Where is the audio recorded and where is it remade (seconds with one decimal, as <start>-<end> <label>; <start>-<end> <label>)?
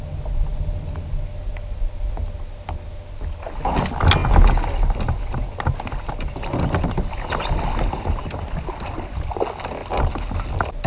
0.0-10.9 recorded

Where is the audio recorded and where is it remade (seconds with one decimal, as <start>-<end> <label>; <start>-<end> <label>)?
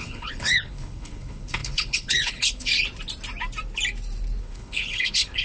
0.0-2.7 remade; 2.7-4.4 recorded; 4.4-5.4 remade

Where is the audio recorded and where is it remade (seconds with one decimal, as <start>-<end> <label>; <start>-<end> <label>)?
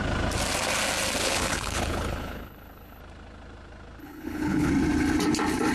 0.0-1.2 recorded; 1.2-3.0 remade; 3.0-4.0 recorded; 4.0-4.7 remade; 4.7-5.7 recorded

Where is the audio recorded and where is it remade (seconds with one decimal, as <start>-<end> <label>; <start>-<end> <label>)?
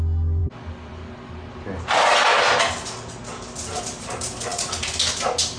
0.0-5.6 recorded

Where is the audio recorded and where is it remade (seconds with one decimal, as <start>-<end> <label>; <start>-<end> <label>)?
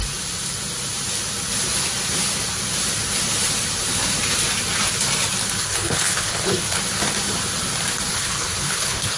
0.0-5.6 recorded; 5.6-6.8 remade; 6.8-8.1 recorded; 8.1-9.2 remade